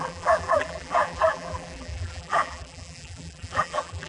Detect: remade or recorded remade